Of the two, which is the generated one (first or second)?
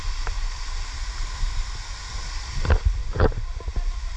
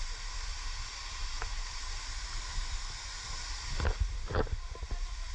first